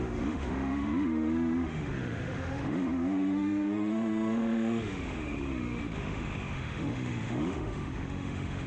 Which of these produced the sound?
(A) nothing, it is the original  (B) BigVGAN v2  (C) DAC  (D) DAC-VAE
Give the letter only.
D